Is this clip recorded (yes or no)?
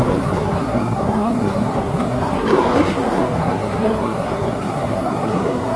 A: no